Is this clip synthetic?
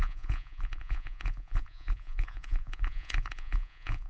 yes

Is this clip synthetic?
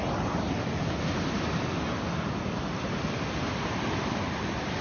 no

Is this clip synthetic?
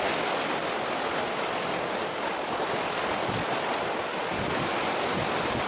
no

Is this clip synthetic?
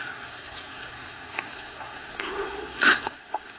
yes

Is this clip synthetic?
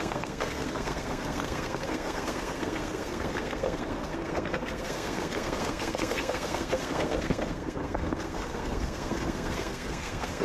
yes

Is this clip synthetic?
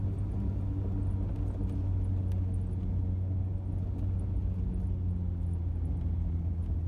no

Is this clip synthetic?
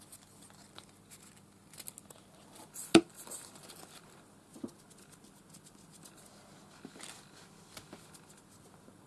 no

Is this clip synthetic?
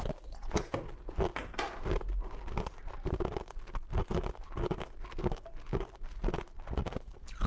no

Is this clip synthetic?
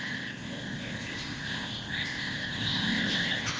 yes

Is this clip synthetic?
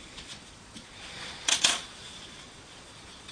yes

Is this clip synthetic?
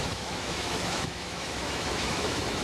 yes